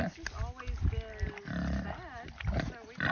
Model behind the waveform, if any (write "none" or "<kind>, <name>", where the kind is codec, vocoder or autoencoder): none